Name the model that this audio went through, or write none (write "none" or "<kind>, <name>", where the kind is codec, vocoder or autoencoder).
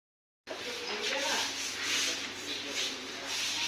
none